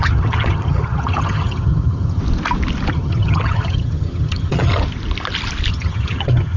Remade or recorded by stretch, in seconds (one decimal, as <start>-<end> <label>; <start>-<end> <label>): 0.0-2.2 remade; 2.2-2.9 recorded; 2.9-4.7 remade; 4.7-5.7 recorded; 5.7-6.6 remade